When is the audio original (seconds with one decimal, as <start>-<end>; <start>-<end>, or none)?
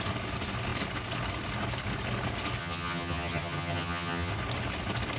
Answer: 0.0-2.6; 4.3-5.2